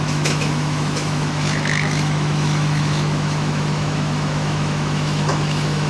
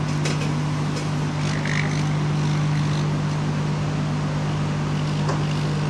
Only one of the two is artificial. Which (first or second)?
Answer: first